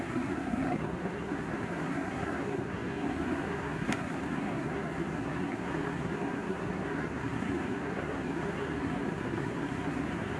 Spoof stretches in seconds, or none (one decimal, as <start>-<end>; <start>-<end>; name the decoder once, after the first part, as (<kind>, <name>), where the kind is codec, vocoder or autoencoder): 0.0-10.4 (codec, SNAC)